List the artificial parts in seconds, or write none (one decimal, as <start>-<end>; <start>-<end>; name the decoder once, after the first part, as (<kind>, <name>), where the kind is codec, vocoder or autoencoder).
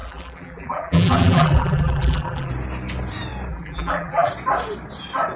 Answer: 0.0-2.5 (vocoder, BigVGAN v2); 3.5-4.3